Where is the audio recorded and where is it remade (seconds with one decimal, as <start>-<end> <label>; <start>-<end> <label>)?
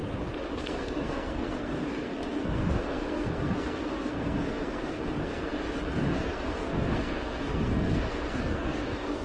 0.0-0.6 recorded; 0.6-5.5 remade; 5.5-6.1 recorded; 6.1-9.2 remade